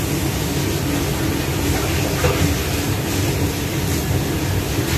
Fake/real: real